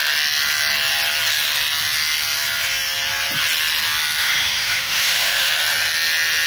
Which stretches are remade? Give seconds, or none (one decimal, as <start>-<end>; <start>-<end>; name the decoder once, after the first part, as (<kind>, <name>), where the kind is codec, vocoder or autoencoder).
4.2-5.5 (autoencoder, DAC-VAE)